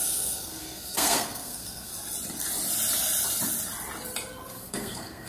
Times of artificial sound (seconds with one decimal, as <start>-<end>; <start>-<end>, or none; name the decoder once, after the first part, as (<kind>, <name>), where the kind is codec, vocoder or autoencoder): 0.0-1.9 (codec, SNAC); 4.5-5.3